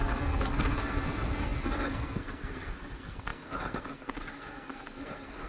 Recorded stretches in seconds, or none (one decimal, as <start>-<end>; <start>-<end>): none